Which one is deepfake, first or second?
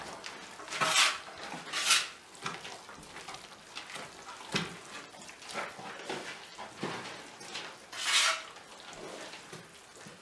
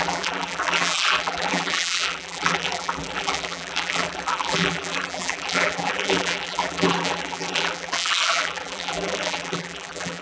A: second